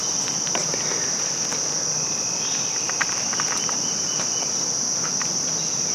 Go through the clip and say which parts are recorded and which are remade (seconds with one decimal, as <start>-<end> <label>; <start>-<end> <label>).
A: 0.0-1.5 recorded; 1.5-4.9 remade; 4.9-5.9 recorded